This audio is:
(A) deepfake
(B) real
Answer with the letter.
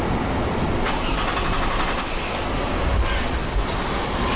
B